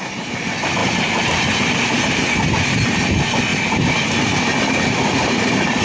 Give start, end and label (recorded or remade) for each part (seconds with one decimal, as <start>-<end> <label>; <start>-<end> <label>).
0.0-0.8 recorded; 0.8-1.6 remade; 1.6-3.5 recorded; 3.5-5.8 remade